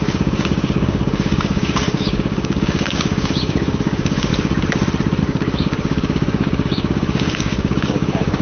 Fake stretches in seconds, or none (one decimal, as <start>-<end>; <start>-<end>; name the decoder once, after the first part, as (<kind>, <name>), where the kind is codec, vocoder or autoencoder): 0.0-4.3 (codec, DAC); 5.2-8.4